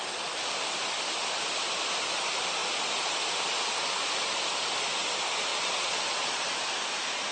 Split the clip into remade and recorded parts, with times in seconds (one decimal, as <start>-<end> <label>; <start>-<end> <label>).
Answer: 0.0-5.5 recorded; 5.5-6.4 remade; 6.4-7.3 recorded